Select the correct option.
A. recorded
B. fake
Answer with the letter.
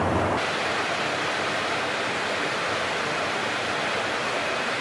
A